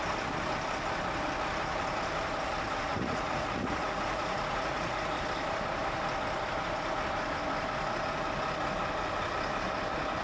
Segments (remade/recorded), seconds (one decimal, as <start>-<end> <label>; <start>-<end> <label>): 0.0-2.9 recorded; 2.9-5.2 remade; 5.2-10.2 recorded